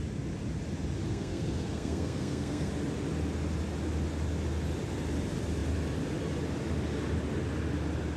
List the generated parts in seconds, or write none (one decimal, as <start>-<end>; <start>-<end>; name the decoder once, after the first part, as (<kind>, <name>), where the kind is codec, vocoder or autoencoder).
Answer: 1.1-2.7 (codec, SNAC)